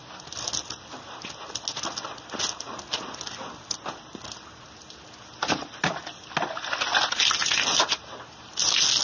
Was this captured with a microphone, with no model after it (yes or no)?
yes